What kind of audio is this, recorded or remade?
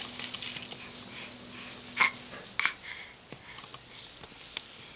recorded